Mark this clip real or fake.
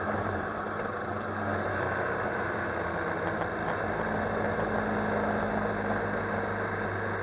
real